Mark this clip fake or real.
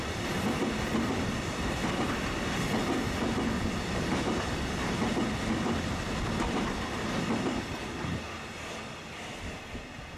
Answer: fake